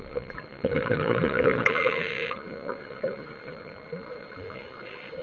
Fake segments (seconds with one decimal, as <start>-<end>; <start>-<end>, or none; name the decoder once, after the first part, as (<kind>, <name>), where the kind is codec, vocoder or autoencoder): 0.0-5.2 (vocoder, Vocos)